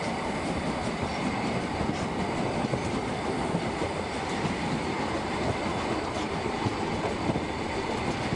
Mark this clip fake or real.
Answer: real